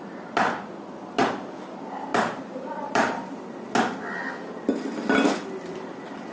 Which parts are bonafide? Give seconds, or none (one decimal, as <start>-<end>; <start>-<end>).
0.0-2.1; 3.4-6.3